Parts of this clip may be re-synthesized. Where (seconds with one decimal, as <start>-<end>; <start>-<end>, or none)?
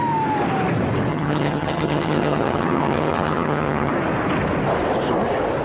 1.1-3.9